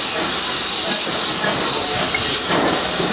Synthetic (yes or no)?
no